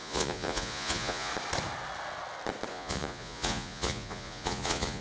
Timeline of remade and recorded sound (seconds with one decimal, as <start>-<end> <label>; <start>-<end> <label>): 0.0-1.3 remade; 1.3-2.7 recorded; 2.7-5.0 remade